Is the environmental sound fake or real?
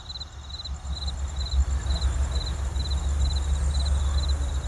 real